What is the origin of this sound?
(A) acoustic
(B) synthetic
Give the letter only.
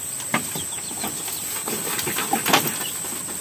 A